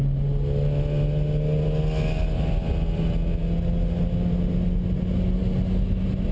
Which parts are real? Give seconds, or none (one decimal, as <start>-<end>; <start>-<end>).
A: 0.0-6.3